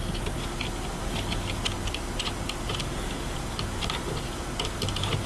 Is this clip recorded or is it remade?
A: recorded